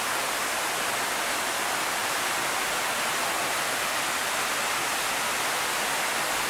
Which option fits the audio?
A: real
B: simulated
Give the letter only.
A